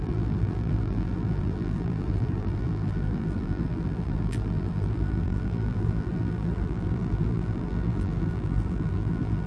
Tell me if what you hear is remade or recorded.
remade